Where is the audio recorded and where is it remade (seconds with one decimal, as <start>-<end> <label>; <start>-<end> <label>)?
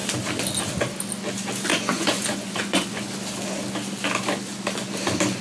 0.0-1.7 recorded; 1.7-3.1 remade; 3.1-5.4 recorded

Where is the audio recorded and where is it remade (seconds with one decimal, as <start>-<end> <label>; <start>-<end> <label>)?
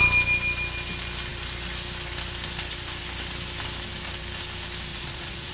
0.0-4.9 recorded; 4.9-5.5 remade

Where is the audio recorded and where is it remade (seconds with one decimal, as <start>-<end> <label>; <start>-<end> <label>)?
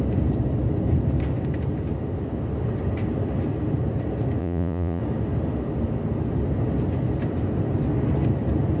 0.0-4.4 recorded; 4.4-5.0 remade; 5.0-8.8 recorded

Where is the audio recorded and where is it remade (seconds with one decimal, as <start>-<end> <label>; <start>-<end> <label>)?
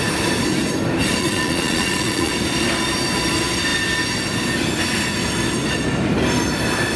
0.0-1.2 recorded; 1.2-2.3 remade; 2.3-7.0 recorded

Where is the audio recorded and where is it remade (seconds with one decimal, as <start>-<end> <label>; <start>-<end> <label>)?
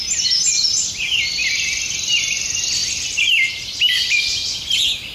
0.0-5.1 recorded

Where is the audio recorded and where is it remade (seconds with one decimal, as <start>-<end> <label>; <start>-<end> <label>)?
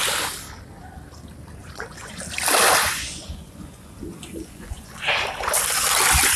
0.0-1.6 recorded; 1.6-2.2 remade; 2.2-2.8 recorded; 2.8-5.0 remade; 5.0-6.4 recorded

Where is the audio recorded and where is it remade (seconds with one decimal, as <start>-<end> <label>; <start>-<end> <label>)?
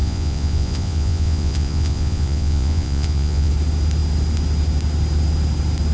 0.0-3.5 remade; 3.5-5.9 recorded